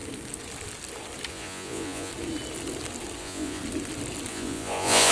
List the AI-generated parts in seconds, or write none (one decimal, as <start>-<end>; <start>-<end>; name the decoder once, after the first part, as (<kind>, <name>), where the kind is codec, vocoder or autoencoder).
1.3-2.1 (vocoder, Vocos); 3.2-3.6; 4.3-5.1

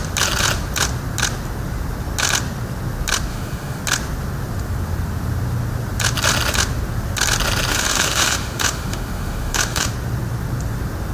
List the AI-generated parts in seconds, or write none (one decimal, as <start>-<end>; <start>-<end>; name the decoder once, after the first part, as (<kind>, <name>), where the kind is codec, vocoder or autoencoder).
3.3-3.8 (autoencoder, DAC-VAE); 7.7-9.9

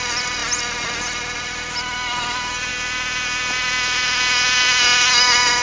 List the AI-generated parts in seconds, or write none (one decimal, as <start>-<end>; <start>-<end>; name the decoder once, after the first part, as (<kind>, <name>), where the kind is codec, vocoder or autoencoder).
none

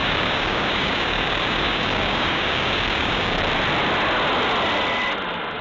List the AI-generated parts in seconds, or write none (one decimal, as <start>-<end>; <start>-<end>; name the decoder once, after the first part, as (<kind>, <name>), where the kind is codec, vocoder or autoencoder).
0.0-3.4 (codec, DAC)

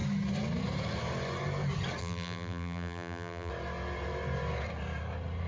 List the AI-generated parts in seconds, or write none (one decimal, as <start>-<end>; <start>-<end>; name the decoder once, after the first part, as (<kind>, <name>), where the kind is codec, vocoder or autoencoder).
2.0-3.5 (vocoder, BigVGAN v2)

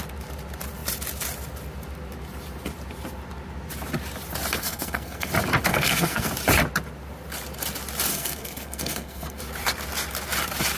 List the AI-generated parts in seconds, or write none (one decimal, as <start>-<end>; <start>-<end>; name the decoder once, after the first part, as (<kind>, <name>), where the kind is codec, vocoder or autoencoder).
4.6-5.3 (codec, SNAC); 5.7-6.3; 8.1-9.4